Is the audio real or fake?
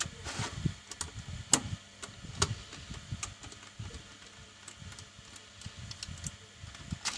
real